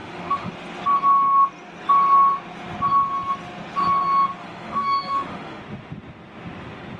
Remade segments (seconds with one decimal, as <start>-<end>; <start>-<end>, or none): 0.0-0.5; 4.4-5.6